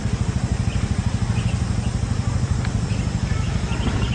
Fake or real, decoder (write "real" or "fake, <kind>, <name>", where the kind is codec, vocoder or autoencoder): real